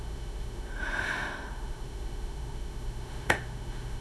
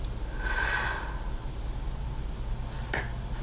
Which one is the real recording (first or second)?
second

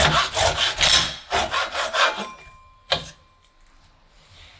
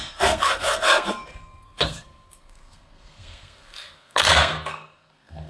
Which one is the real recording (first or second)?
first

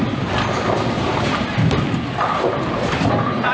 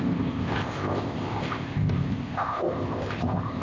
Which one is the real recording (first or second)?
first